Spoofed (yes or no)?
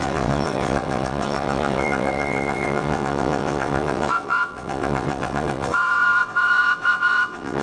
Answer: yes